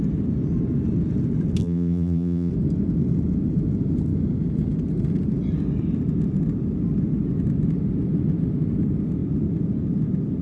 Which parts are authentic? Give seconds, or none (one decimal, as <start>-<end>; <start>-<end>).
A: 0.0-1.6; 2.5-10.4